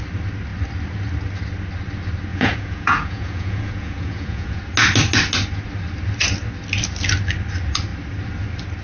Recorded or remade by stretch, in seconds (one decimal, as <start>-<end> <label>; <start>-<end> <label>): 0.0-2.3 recorded; 2.3-4.6 remade; 4.6-8.8 recorded